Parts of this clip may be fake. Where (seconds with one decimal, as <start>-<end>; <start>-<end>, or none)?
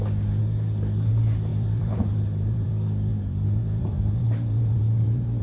1.5-2.7; 3.1-5.4